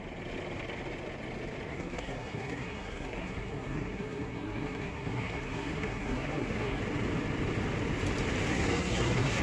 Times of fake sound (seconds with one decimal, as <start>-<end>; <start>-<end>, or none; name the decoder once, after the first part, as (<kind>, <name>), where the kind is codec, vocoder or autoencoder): 1.7-6.8 (codec, SNAC); 8.5-9.4